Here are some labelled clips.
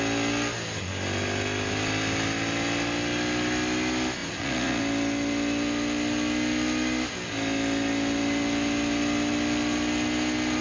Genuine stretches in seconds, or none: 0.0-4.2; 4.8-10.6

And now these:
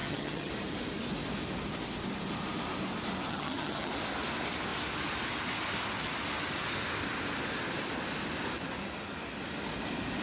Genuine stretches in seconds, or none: 0.5-3.3; 3.9-10.2

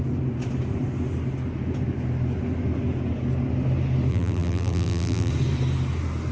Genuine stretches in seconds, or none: 0.0-4.1; 5.3-6.3

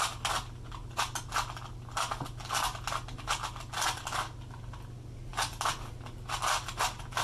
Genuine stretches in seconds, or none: 0.0-7.2

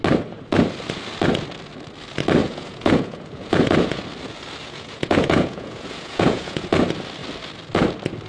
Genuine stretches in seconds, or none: 0.0-2.4; 4.0-4.6; 6.8-8.3

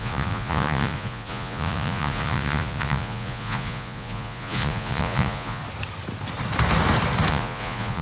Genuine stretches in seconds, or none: 5.6-7.3

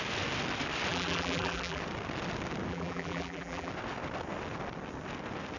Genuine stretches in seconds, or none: 0.0-0.9; 1.8-2.7; 3.7-5.6

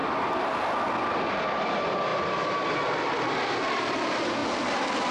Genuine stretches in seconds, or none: 0.0-5.1